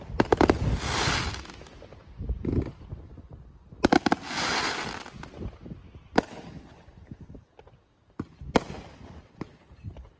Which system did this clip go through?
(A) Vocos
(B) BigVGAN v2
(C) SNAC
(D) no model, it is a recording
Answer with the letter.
D